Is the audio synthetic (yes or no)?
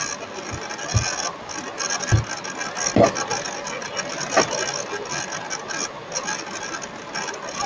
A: no